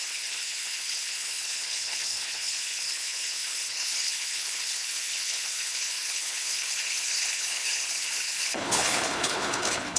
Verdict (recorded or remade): remade